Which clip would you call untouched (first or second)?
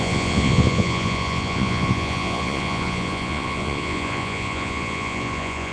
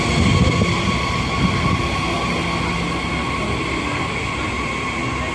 second